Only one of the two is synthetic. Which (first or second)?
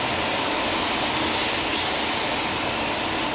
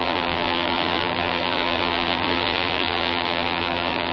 second